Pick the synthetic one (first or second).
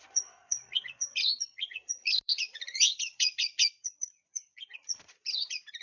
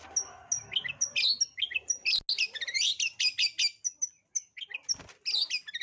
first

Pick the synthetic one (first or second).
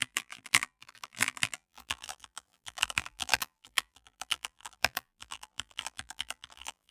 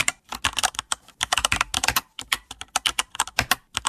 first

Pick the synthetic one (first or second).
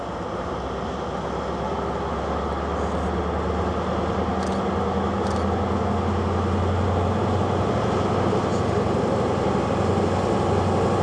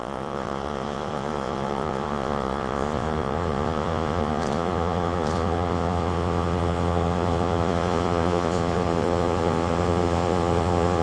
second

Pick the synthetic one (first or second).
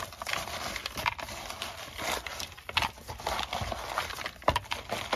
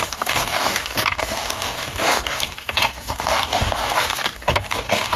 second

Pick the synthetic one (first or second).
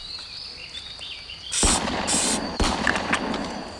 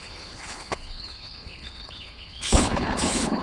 second